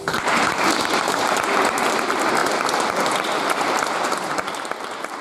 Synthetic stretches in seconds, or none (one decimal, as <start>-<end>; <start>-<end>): 2.4-4.3